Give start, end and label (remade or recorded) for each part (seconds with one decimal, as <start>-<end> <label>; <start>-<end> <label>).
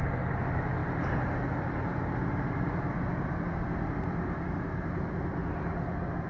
0.0-6.3 recorded